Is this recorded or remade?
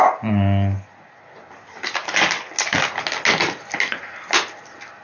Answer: recorded